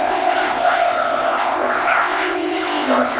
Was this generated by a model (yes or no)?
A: yes